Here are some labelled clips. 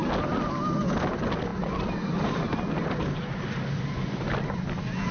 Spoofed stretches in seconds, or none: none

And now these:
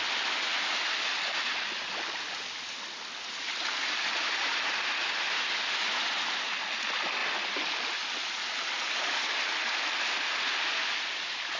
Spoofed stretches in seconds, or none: none

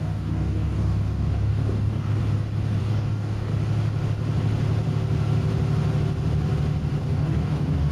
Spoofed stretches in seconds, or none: 0.0-2.2 (codec, DAC); 2.8-3.5; 7.0-7.9

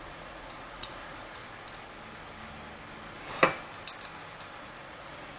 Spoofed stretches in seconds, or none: 0.0-1.4 (vocoder, Vocos); 4.6-5.4

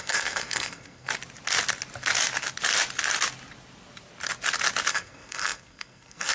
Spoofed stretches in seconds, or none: 0.0-1.1 (codec, SNAC); 4.9-6.3

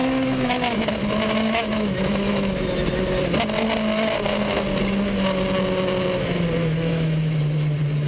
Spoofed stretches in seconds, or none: 0.0-2.6 (autoencoder, DAC-VAE); 6.6-7.4